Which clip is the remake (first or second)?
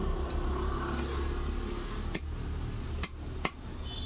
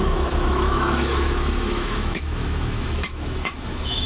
second